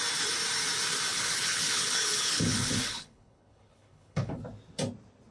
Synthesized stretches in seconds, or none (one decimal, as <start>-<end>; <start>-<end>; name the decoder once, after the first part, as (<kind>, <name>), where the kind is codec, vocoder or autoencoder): 1.1-4.3 (codec, HILCodec)